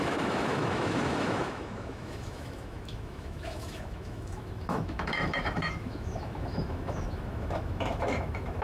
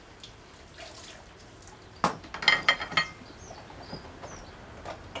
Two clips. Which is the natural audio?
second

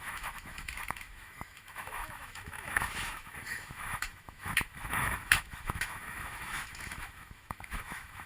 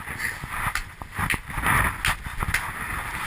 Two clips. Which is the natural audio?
second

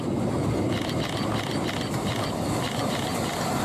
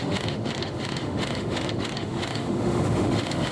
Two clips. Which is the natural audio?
first